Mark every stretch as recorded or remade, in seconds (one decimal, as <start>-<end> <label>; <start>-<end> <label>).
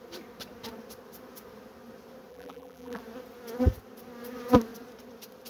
0.0-2.3 recorded; 2.3-3.0 remade; 3.0-5.5 recorded